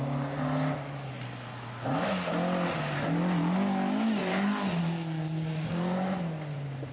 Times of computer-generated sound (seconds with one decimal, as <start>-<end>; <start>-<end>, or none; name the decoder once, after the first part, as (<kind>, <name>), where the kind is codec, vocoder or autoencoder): none